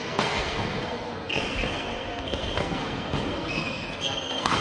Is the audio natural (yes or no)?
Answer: no